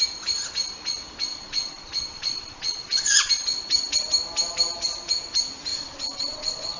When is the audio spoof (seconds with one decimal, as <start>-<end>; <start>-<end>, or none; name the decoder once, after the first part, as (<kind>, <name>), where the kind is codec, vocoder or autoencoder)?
1.3-3.3 (vocoder, Vocos); 5.7-6.8